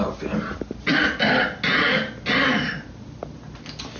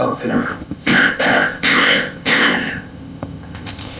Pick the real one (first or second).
first